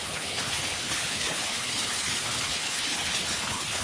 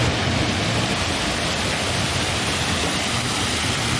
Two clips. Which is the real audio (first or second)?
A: second